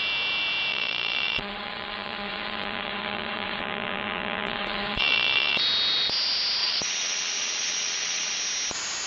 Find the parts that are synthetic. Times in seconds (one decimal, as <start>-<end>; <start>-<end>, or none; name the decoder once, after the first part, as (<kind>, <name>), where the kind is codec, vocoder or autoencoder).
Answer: 0.7-5.6 (vocoder, Vocos); 6.6-8.4